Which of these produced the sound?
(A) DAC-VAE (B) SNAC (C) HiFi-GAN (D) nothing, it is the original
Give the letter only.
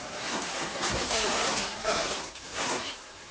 B